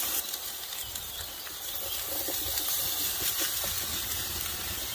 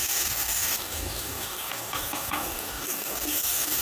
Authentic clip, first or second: first